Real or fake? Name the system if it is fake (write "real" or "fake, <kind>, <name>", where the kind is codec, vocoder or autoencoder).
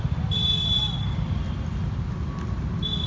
real